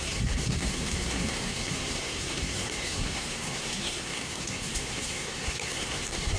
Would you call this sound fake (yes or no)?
yes